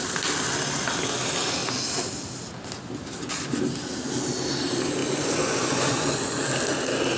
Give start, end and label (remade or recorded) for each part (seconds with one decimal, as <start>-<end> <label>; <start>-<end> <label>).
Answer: 0.0-5.0 recorded; 5.0-6.4 remade; 6.4-7.2 recorded